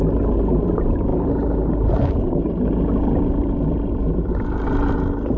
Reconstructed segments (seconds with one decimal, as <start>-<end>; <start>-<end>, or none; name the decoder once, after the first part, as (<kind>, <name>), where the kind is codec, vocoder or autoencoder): none